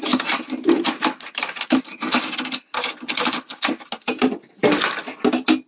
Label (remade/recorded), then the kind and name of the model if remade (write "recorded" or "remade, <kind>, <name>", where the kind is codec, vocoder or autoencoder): recorded